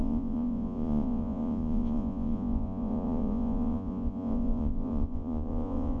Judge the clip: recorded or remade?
remade